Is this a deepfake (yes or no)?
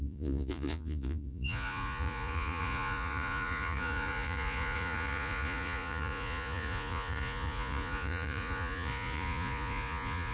yes